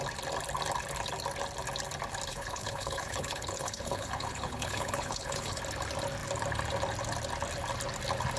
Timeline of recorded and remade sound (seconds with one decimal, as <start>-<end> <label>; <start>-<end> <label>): 0.0-2.3 recorded; 2.3-5.6 remade; 5.6-8.4 recorded